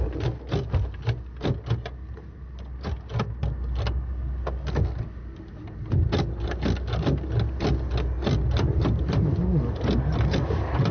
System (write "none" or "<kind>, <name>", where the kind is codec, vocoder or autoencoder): none